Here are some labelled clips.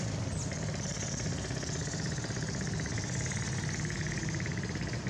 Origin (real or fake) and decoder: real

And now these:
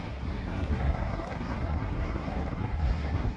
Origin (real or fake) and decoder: fake, codec, SNAC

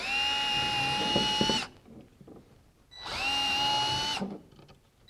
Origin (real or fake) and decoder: real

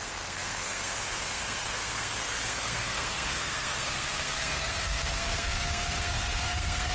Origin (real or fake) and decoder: fake, codec, SNAC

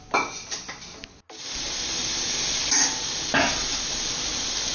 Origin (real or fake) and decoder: real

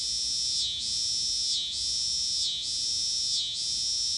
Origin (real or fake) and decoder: real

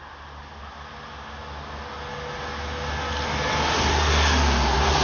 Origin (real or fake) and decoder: real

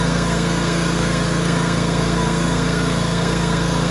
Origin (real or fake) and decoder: fake, codec, SNAC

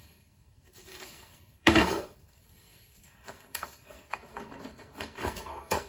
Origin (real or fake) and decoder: fake, codec, SNAC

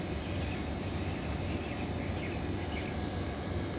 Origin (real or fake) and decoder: real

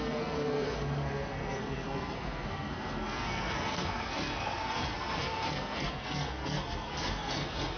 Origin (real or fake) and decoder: fake, codec, SNAC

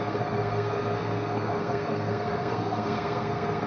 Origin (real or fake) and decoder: fake, codec, SNAC